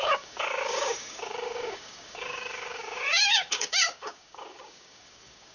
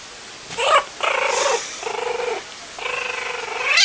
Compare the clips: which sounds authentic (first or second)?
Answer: second